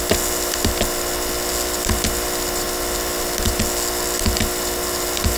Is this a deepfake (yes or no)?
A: no